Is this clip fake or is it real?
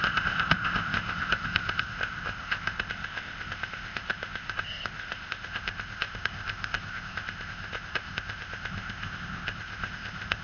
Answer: fake